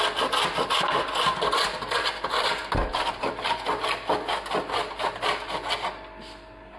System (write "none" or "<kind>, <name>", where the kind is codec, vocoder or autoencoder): none